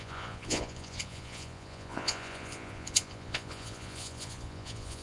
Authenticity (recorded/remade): remade